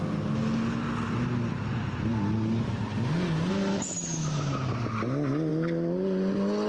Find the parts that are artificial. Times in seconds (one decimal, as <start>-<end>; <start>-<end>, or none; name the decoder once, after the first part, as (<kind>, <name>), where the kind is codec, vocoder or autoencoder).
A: none

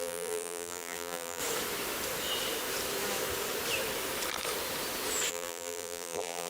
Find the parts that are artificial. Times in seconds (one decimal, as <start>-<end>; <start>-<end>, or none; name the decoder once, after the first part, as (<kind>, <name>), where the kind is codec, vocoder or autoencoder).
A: 0.0-1.4 (vocoder, BigVGAN v2); 5.3-6.5